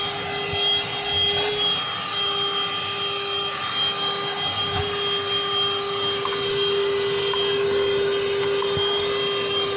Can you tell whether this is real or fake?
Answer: real